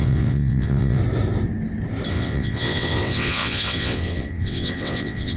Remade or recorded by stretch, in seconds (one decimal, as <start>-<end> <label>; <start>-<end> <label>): 0.0-1.0 remade; 1.0-2.1 recorded; 2.1-5.4 remade